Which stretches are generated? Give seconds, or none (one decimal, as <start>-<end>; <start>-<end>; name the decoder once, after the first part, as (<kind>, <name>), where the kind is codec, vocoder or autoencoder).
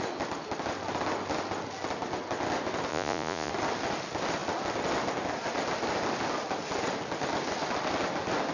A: 2.9-3.5 (vocoder, Vocos)